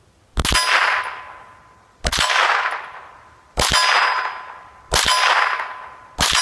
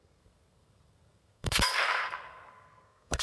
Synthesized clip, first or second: second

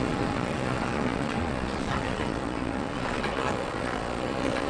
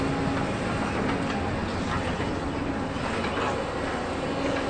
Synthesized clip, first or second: first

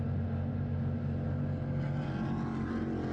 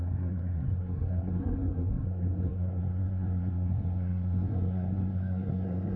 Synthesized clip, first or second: second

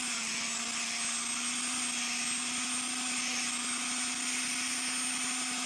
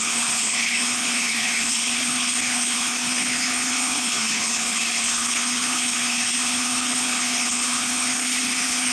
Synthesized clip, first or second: second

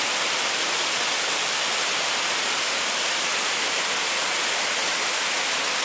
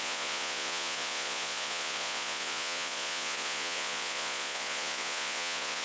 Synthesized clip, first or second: second